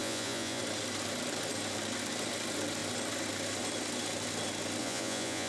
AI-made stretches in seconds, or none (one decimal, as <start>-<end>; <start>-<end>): 0.0-0.6; 4.8-5.5